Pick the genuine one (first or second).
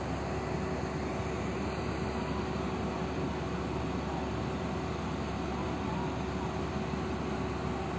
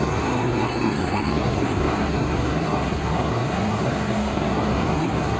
first